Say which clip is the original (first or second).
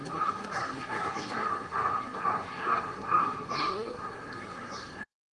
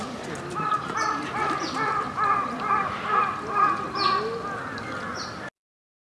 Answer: second